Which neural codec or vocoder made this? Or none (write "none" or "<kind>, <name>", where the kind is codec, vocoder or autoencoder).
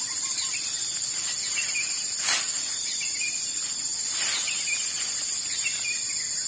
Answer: none